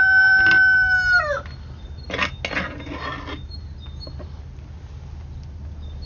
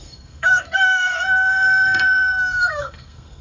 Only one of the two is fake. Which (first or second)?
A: second